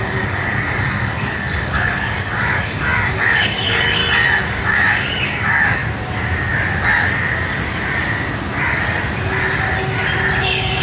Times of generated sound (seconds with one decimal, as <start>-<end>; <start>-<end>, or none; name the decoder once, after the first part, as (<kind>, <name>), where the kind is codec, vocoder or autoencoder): 0.0-4.0 (codec, DAC); 4.6-5.8; 10.4-10.8